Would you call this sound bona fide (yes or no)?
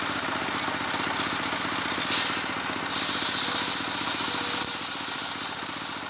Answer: yes